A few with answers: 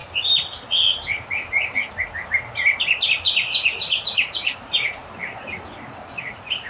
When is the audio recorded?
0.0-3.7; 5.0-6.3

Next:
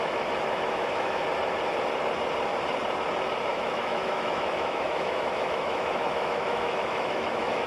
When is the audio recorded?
1.2-3.5

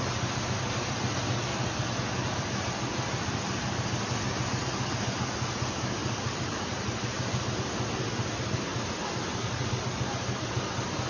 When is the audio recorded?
0.0-6.0; 7.5-11.1

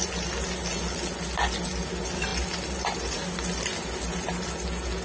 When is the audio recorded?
0.0-5.0

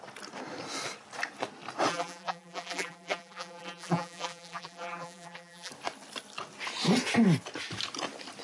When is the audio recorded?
0.0-1.9; 5.7-8.4

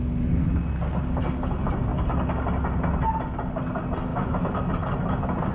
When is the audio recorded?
0.0-4.1; 4.7-5.5